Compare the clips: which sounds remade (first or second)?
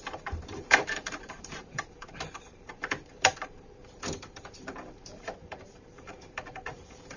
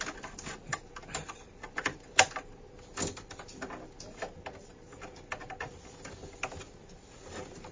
first